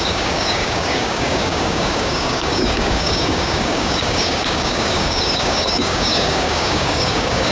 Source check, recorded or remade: remade